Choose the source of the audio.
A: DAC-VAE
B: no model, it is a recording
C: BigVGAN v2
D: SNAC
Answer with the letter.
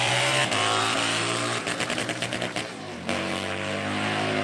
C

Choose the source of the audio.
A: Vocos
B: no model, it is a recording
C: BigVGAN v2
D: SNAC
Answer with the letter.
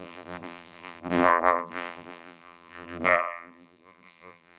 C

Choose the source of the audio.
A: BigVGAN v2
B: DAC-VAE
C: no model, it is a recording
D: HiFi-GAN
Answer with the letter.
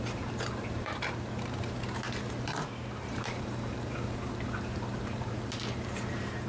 A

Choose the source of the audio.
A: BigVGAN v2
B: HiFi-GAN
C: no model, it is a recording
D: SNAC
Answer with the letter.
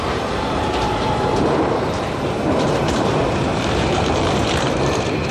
A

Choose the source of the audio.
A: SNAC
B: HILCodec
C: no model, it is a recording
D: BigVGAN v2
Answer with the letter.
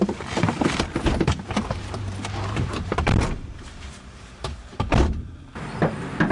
D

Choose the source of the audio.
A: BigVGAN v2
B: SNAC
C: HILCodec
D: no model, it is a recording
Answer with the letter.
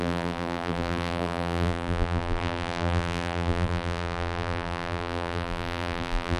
A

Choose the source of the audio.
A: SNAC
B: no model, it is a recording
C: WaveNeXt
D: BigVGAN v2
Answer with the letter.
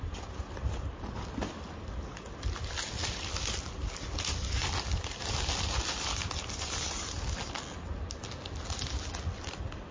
B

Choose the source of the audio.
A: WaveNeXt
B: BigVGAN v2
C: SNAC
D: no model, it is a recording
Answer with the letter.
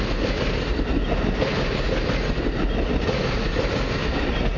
D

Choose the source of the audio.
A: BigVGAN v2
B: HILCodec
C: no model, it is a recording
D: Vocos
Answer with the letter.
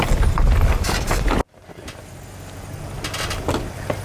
C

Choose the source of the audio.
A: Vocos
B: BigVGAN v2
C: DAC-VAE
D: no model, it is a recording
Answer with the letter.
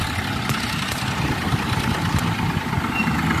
D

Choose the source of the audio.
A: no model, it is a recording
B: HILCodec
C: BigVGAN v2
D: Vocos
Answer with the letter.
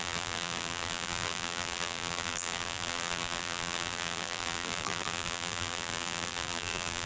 C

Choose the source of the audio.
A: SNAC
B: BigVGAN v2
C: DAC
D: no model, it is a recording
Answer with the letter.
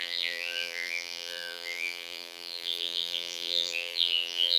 B